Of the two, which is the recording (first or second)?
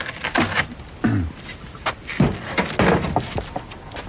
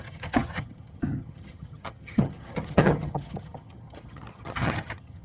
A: first